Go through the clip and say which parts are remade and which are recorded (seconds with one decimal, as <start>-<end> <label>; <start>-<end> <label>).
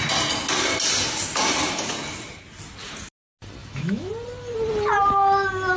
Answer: 0.0-3.6 recorded; 3.6-4.1 remade; 4.1-5.8 recorded